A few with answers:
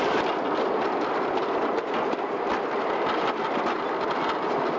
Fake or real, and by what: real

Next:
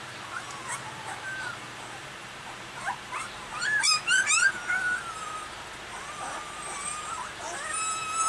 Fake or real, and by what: fake, vocoder, BigVGAN v2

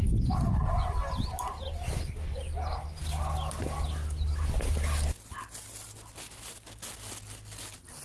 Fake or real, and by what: real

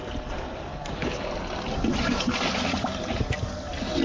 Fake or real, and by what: real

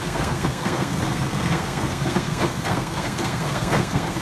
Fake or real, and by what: fake, codec, SNAC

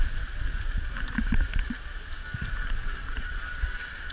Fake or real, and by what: real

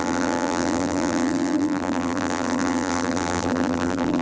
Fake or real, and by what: fake, vocoder, BigVGAN v2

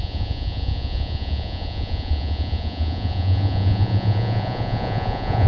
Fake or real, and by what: fake, vocoder, Vocos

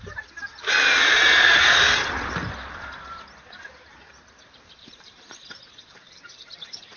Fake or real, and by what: fake, vocoder, BigVGAN v2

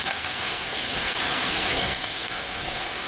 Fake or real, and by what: fake, codec, SNAC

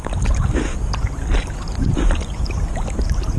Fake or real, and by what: real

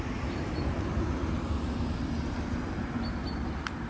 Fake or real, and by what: real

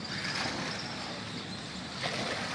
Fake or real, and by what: real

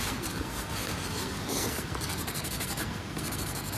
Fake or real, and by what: fake, codec, SNAC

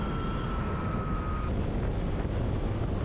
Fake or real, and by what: real